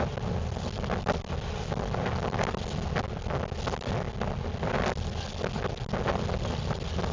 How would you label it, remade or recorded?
recorded